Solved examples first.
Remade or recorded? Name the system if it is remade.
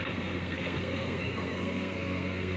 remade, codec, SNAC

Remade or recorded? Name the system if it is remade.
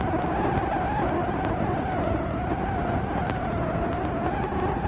recorded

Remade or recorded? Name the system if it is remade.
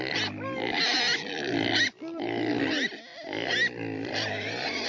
recorded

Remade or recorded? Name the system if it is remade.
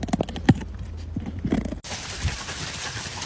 recorded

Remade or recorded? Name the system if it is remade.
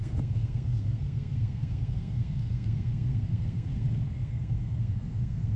remade, codec, SNAC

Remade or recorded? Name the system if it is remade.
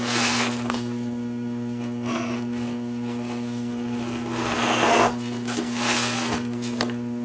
remade, codec, SNAC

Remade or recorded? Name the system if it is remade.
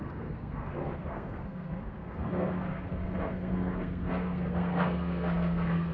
remade, codec, SNAC